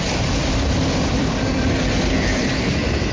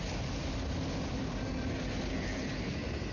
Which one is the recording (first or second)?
second